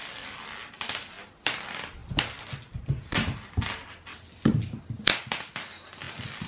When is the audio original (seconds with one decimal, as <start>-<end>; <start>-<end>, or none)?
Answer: 0.0-6.5